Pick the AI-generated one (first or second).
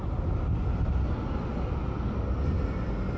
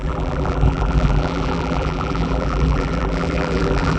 second